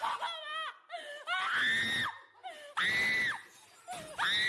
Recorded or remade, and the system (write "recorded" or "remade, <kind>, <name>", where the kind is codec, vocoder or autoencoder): recorded